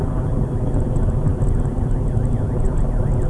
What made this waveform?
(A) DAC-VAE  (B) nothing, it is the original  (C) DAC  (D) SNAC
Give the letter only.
B